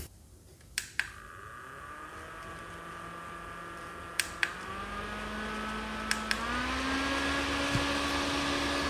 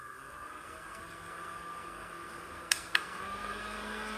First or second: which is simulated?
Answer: second